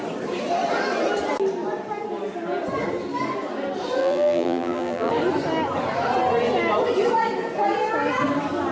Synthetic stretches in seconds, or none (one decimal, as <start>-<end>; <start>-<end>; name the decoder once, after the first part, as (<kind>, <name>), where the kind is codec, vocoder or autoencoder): 4.0-5.1 (vocoder, BigVGAN v2)